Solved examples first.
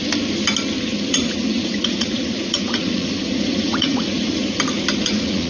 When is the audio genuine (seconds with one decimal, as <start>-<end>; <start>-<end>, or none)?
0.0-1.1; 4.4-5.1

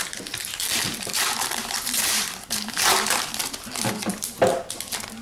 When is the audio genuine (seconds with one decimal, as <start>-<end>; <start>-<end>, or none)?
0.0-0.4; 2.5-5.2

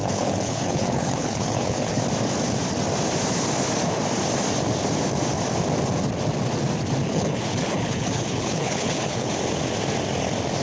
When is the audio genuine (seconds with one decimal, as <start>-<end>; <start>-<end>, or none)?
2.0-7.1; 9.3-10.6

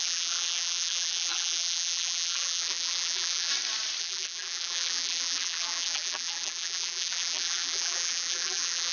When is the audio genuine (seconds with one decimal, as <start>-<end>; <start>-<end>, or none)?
3.5-4.0

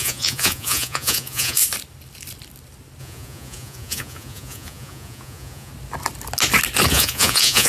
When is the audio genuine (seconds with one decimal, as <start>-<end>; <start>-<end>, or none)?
1.6-3.0; 5.7-6.9

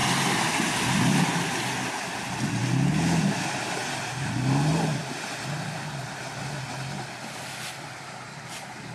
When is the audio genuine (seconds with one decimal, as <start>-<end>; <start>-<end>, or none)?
0.0-8.9

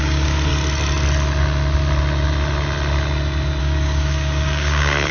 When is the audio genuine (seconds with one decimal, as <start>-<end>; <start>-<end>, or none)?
0.5-3.6

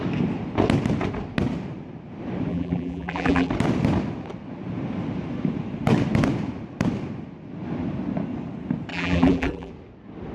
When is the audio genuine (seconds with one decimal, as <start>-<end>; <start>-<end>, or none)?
0.0-2.5; 3.5-8.9; 9.7-10.3